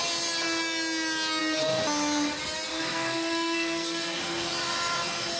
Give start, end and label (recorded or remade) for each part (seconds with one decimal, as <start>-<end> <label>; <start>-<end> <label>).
0.0-2.7 recorded; 2.7-4.5 remade; 4.5-5.4 recorded